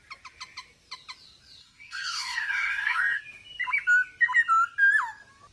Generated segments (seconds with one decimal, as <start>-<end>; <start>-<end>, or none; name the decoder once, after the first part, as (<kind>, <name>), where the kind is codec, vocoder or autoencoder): 1.6-3.2 (codec, SNAC)